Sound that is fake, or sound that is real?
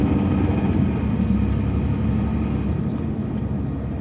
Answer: real